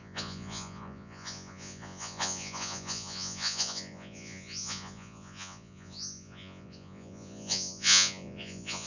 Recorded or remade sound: remade